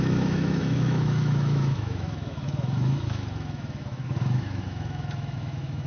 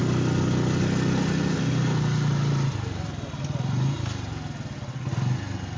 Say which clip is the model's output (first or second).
first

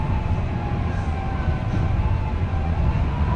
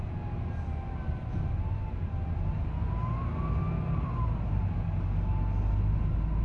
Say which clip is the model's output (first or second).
first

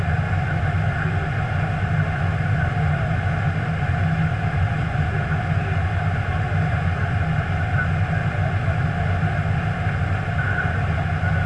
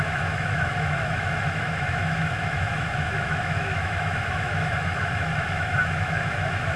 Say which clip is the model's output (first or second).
second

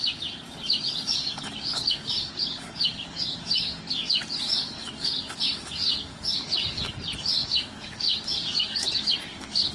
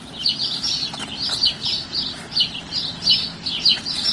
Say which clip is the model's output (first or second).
first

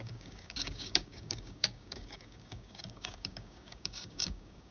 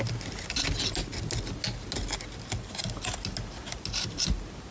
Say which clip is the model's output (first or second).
first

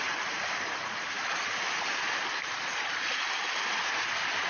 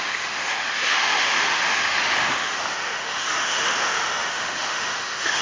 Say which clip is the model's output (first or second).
second